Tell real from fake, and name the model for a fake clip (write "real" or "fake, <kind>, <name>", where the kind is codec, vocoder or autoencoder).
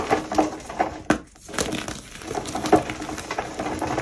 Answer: real